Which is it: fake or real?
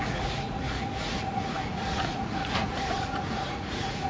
fake